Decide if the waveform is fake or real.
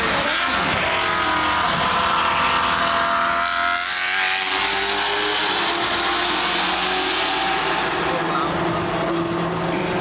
real